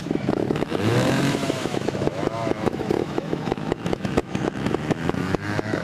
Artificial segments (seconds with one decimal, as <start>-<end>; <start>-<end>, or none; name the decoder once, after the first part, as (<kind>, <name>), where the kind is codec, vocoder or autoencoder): 0.0-5.8 (autoencoder, DAC-VAE)